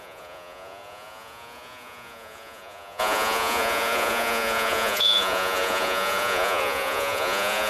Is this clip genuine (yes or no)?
no